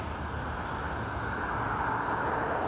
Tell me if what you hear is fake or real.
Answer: real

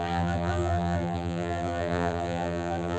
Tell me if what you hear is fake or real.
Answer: fake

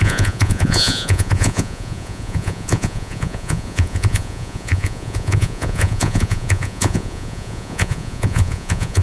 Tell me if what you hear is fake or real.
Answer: fake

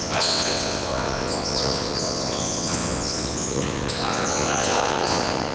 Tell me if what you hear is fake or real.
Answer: fake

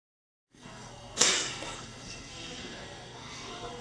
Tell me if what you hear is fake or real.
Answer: fake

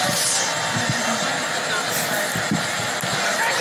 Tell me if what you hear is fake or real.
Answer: real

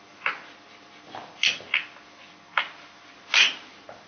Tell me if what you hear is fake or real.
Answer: real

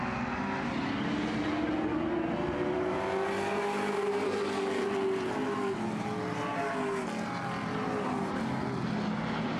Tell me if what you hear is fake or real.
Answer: real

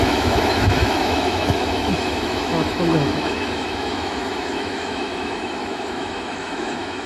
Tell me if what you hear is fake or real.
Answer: fake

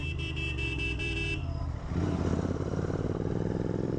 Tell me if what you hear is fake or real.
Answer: fake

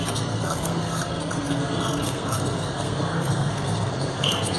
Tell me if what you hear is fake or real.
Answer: fake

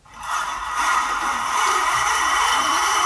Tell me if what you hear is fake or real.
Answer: fake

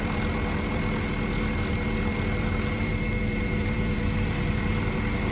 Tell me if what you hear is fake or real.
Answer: fake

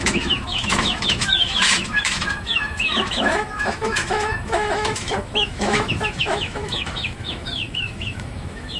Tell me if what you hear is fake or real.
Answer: fake